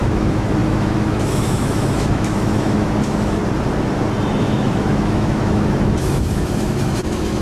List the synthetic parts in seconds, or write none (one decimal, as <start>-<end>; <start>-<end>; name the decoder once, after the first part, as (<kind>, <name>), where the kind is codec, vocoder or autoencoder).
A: 0.0-3.4 (autoencoder, DAC-VAE); 4.4-7.4